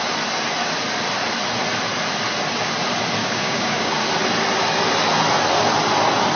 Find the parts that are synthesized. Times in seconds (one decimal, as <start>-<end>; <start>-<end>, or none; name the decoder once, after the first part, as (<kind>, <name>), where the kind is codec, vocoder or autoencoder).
3.2-4.0 (codec, DAC)